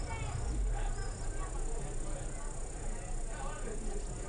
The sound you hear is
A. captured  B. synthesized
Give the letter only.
A